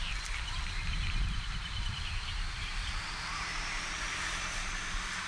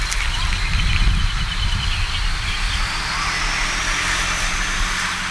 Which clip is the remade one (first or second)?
first